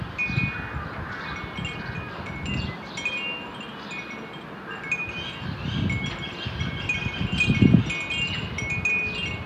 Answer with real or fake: real